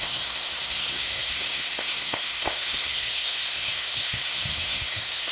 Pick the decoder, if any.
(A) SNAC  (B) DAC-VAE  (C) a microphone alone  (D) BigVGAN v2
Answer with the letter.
A